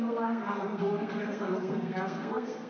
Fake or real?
fake